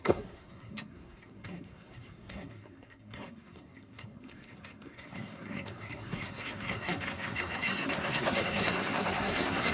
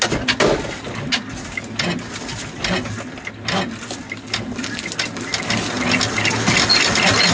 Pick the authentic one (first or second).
second